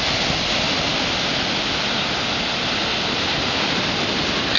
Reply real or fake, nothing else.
real